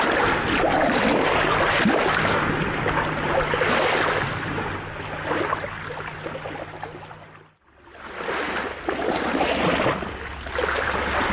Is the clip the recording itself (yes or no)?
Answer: yes